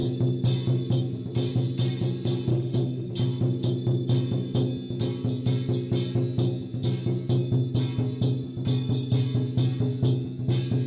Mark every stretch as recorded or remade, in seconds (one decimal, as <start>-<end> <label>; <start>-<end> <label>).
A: 0.0-2.5 recorded; 2.5-3.1 remade; 3.1-10.9 recorded